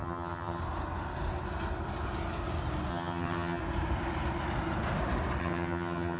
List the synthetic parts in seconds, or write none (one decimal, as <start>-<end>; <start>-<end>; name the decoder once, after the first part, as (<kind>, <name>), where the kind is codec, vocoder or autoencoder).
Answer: 0.0-0.6 (vocoder, HiFi-GAN); 2.9-3.6; 5.4-6.2